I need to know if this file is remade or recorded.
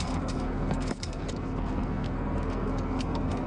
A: remade